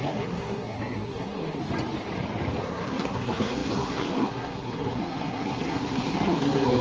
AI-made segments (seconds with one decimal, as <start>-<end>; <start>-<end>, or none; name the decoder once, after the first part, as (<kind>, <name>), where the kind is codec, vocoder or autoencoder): 0.0-1.6 (codec, SNAC); 2.6-6.8